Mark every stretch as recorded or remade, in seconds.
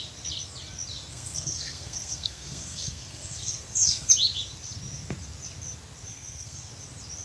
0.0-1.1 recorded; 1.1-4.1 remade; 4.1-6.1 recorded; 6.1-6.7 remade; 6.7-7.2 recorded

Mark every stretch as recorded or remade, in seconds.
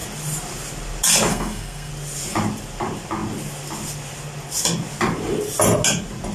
0.0-1.3 recorded; 1.3-1.9 remade; 1.9-6.3 recorded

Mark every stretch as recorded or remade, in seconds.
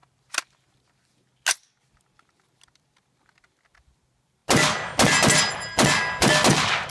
0.0-6.9 recorded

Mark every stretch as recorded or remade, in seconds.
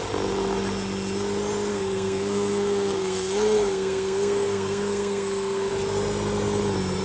0.0-1.7 recorded; 1.7-5.7 remade; 5.7-7.0 recorded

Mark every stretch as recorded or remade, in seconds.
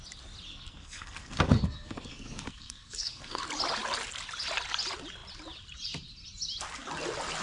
0.0-0.5 recorded; 0.5-3.4 remade; 3.4-7.4 recorded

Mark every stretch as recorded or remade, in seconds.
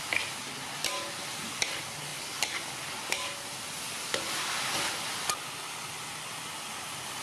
0.0-7.2 recorded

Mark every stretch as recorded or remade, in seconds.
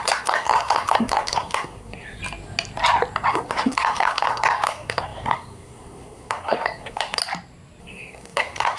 0.0-2.2 remade; 2.2-3.3 recorded; 3.3-7.2 remade; 7.2-7.8 recorded; 7.8-8.8 remade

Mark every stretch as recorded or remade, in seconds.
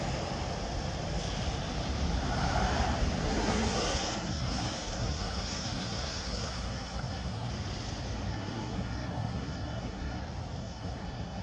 0.0-3.2 recorded; 3.2-7.5 remade; 7.5-8.3 recorded; 8.3-10.2 remade; 10.2-10.6 recorded; 10.6-11.4 remade